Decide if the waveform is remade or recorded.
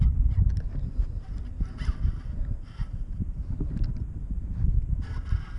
recorded